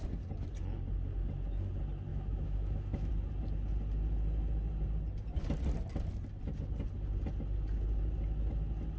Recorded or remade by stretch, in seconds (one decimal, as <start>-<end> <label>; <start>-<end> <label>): 0.0-2.1 recorded; 2.1-3.1 remade; 3.1-9.0 recorded